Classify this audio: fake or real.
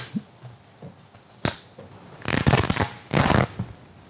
real